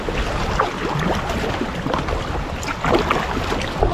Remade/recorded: recorded